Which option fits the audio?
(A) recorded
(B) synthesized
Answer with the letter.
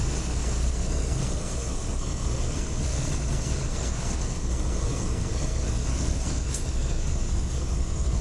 B